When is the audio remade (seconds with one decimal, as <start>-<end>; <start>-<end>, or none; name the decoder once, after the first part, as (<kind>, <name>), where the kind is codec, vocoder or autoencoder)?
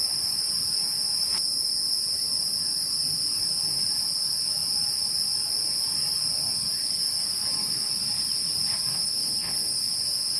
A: 8.9-9.8 (codec, HILCodec)